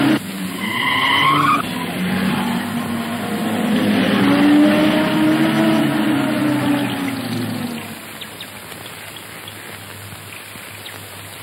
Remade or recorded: recorded